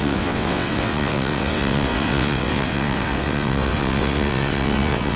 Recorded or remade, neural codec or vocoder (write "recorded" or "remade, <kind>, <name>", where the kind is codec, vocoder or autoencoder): remade, vocoder, WaveNeXt